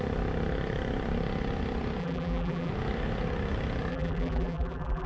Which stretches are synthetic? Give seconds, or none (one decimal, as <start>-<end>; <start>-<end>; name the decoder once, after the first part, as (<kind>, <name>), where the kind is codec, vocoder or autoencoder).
2.0-2.7 (vocoder, BigVGAN v2); 3.9-5.1